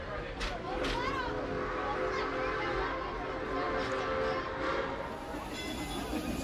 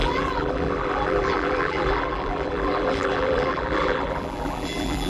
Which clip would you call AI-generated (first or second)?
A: second